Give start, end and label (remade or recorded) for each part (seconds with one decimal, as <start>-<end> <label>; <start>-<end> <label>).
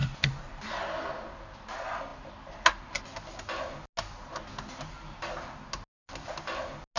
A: 0.0-0.7 remade; 0.7-7.0 recorded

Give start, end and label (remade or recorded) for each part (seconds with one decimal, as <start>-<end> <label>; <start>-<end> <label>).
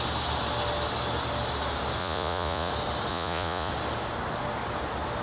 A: 0.0-2.0 recorded; 2.0-2.7 remade; 2.7-3.1 recorded; 3.1-3.7 remade; 3.7-5.2 recorded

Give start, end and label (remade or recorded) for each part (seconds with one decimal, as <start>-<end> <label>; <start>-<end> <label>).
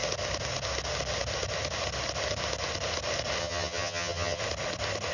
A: 0.0-3.4 recorded; 3.4-4.4 remade; 4.4-5.1 recorded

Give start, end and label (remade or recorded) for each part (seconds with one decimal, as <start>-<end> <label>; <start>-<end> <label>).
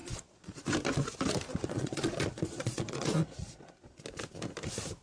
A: 0.0-0.6 remade; 0.6-1.5 recorded; 1.5-4.0 remade; 4.0-5.0 recorded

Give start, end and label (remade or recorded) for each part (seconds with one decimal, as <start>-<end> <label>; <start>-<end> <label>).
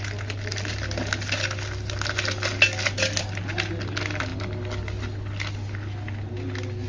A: 0.0-6.9 recorded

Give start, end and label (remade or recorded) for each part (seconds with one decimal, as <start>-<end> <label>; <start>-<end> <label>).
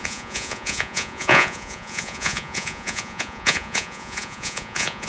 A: 0.0-5.1 remade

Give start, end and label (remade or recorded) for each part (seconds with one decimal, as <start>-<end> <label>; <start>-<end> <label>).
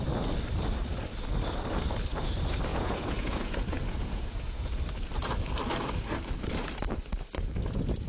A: 0.0-2.7 recorded; 2.7-4.7 remade; 4.7-8.1 recorded